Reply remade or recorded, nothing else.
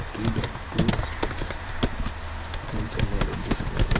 recorded